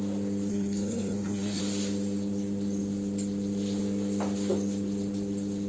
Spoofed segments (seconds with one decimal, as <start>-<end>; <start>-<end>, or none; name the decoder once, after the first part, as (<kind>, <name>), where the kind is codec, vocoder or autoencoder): 0.5-1.6 (codec, SNAC)